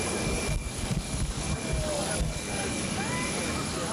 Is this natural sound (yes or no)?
no